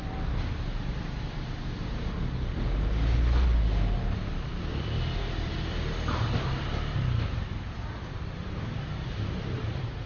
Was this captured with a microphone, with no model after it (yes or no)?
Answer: yes